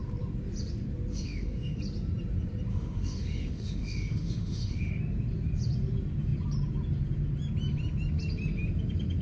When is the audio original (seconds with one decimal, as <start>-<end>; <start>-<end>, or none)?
0.0-1.1; 1.8-2.7; 4.9-9.2